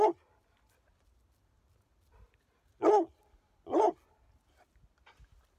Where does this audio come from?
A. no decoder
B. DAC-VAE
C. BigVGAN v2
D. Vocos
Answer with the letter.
A